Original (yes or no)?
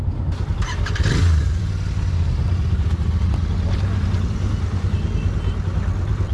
yes